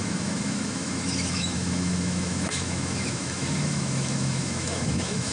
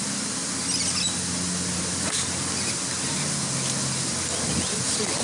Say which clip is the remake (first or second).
first